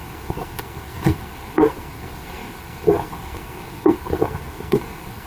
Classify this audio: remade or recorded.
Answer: remade